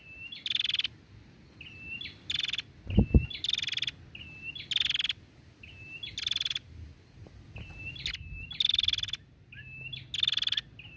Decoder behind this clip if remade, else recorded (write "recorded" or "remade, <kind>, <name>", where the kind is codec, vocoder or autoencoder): recorded